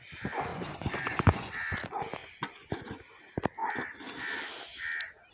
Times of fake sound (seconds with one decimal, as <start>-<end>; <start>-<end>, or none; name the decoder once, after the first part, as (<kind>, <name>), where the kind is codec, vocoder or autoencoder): 0.5-1.5 (vocoder, Vocos); 2.2-2.8